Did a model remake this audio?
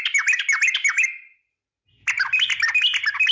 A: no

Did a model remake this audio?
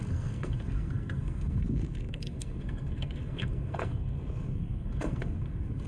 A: yes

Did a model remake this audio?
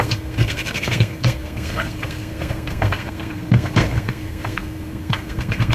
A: yes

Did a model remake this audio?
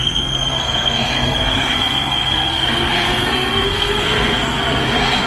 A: yes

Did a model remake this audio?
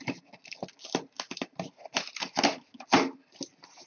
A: no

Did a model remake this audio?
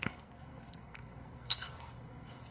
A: yes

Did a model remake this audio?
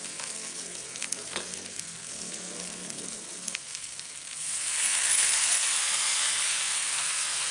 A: yes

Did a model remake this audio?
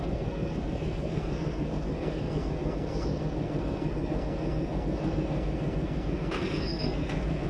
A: yes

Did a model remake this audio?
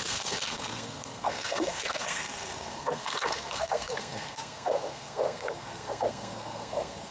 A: yes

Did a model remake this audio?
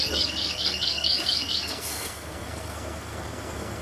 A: yes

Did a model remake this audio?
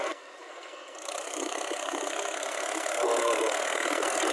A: yes